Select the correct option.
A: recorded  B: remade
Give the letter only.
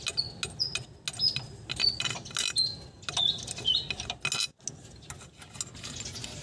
A